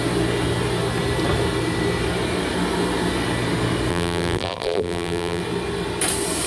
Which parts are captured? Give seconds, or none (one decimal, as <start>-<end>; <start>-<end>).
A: 0.0-3.9; 5.4-6.5

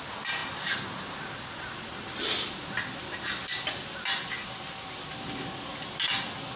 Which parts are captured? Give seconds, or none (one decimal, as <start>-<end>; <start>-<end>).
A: 0.0-6.6

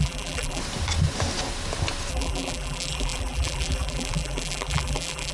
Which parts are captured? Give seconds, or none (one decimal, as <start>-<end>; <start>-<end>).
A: 0.6-2.1

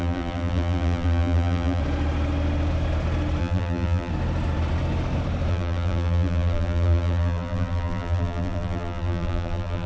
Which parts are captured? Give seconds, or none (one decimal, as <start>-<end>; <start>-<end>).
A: 1.8-3.4; 4.1-5.5

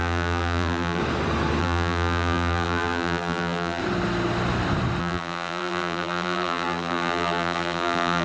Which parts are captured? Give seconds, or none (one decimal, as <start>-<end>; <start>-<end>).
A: 1.0-1.6; 3.8-5.0

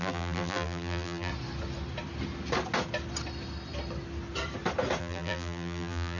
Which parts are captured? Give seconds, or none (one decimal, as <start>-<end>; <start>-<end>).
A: 1.3-5.0